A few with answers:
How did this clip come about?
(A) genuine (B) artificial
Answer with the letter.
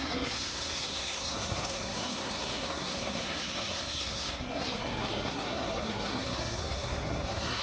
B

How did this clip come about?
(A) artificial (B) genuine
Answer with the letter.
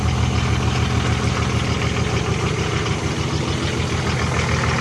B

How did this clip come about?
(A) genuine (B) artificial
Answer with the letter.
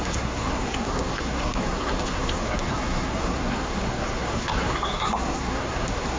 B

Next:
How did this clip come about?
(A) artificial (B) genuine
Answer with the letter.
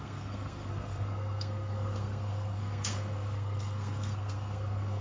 A